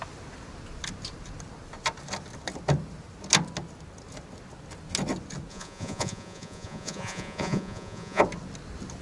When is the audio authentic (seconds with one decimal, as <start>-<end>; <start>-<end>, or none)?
0.0-5.5; 8.2-9.0